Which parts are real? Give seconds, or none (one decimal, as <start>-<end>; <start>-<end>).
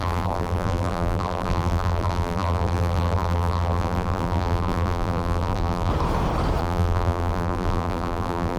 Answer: 5.9-6.6